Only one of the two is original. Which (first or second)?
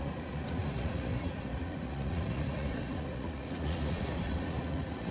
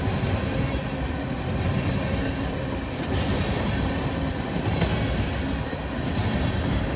second